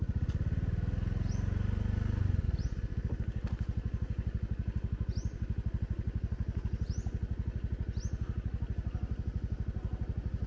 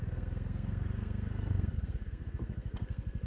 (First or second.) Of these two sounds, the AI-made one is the second